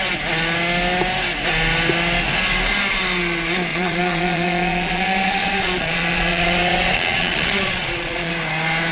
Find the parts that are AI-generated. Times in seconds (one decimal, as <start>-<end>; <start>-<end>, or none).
3.7-8.3